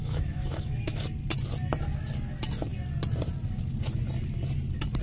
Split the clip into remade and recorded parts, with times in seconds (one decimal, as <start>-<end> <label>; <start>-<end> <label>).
0.0-1.0 remade; 1.0-5.0 recorded